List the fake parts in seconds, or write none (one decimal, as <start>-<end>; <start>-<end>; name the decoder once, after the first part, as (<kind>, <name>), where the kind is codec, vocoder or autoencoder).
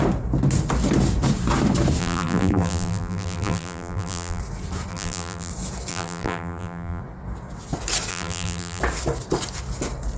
2.0-4.4 (vocoder, BigVGAN v2); 4.9-5.5; 5.9-7.0; 8.1-8.8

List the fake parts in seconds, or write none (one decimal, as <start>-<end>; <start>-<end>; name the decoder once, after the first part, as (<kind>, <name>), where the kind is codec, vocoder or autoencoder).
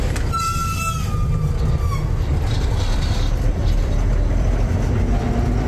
2.3-4.7 (vocoder, BigVGAN v2)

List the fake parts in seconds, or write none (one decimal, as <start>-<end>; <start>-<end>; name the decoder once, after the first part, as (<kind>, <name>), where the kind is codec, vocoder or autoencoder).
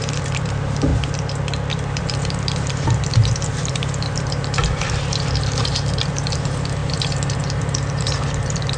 0.0-0.9 (vocoder, BigVGAN v2); 2.0-4.6; 5.4-8.8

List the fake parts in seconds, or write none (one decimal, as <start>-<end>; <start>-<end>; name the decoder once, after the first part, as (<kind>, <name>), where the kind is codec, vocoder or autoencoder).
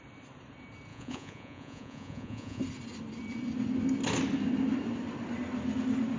0.9-2.6 (vocoder, Vocos)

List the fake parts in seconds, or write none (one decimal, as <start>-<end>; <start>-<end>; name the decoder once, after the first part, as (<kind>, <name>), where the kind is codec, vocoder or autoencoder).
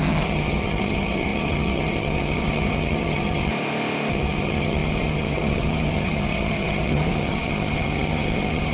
0.0-3.5 (vocoder, HiFi-GAN); 4.1-8.7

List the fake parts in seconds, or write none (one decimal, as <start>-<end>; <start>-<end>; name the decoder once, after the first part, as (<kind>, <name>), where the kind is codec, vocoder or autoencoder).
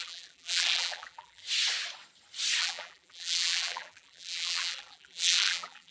0.0-1.4 (vocoder, BigVGAN v2); 2.6-5.9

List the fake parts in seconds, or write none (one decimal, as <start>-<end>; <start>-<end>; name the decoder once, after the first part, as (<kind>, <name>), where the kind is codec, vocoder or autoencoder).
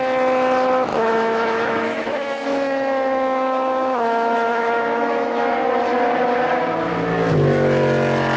0.9-5.5 (autoencoder, DAC-VAE)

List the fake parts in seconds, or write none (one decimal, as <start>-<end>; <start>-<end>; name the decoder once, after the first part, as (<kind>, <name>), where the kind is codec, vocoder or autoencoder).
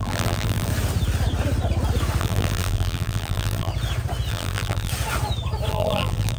0.0-0.7 (vocoder, BigVGAN v2); 2.2-3.7; 4.3-4.9; 5.7-6.4